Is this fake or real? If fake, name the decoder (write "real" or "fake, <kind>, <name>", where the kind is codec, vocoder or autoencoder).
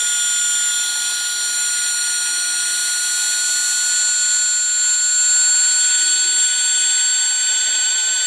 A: real